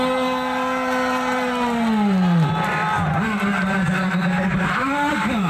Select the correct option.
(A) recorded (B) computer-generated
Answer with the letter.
A